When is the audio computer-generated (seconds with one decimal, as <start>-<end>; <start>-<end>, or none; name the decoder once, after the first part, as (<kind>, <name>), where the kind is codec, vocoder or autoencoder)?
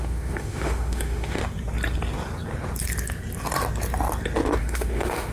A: 0.0-1.4 (autoencoder, DAC-VAE); 4.6-5.3